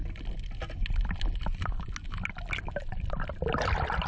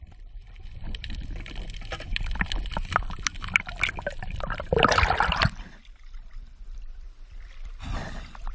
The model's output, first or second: second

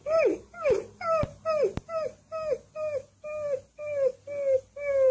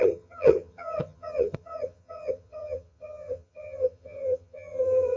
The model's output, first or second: second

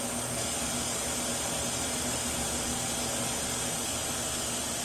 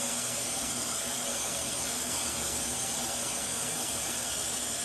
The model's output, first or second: second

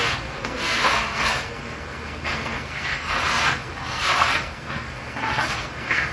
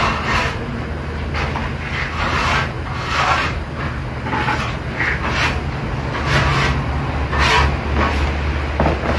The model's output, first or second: first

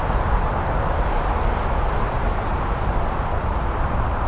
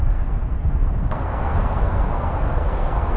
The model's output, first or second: second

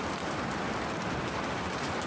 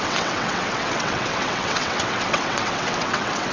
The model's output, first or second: second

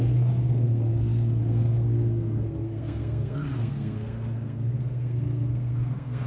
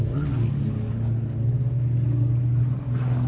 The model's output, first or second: first